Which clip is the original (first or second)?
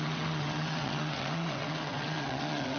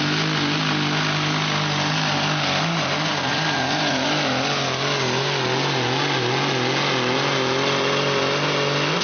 second